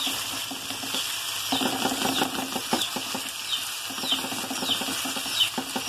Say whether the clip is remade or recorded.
recorded